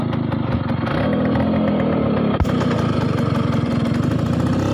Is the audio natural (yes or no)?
yes